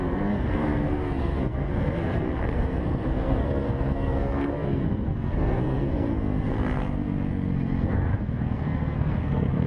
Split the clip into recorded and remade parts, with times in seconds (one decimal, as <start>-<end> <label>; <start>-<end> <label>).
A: 0.0-9.7 remade

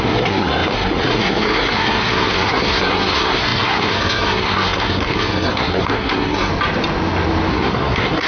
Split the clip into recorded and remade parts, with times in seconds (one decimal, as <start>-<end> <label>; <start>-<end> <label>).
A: 0.0-6.5 remade; 6.5-7.5 recorded; 7.5-8.3 remade

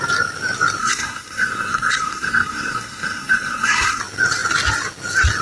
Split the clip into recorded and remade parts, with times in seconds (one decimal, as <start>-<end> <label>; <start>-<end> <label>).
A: 0.0-0.8 recorded; 0.8-4.0 remade; 4.0-5.4 recorded

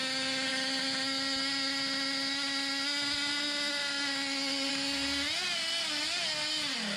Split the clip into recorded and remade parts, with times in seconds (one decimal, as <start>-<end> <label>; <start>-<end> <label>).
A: 0.0-7.0 recorded